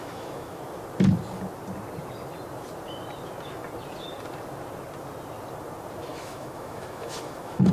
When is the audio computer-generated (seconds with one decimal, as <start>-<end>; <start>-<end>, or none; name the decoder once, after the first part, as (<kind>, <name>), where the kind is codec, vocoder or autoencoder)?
0.0-0.6 (autoencoder, DAC-VAE); 6.1-7.7